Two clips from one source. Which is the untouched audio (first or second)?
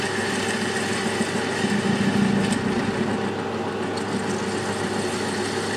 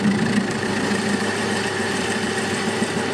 first